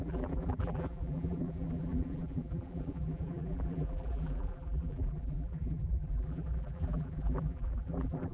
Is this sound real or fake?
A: fake